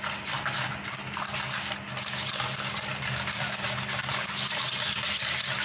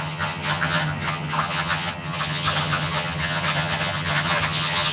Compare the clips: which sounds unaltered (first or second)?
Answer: first